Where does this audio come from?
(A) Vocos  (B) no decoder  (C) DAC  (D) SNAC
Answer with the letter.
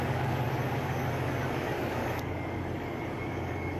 C